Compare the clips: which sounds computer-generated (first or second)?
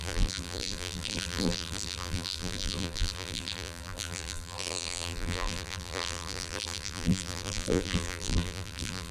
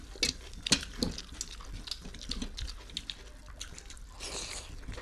first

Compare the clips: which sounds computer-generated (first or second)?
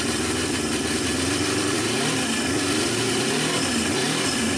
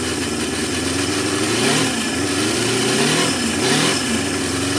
first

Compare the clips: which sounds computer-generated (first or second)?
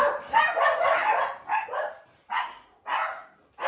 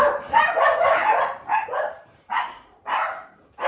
second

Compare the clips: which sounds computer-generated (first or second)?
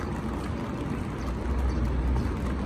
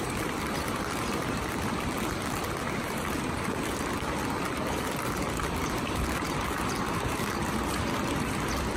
second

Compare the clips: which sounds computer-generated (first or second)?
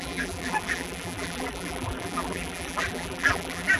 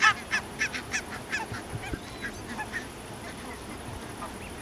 first